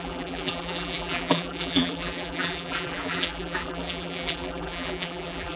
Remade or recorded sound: remade